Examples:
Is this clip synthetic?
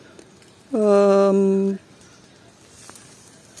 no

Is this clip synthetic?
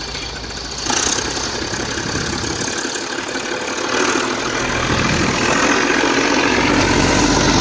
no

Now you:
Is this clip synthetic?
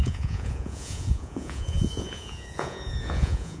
yes